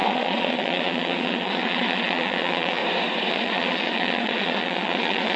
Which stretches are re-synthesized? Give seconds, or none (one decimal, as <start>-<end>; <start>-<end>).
0.0-2.8; 3.3-5.4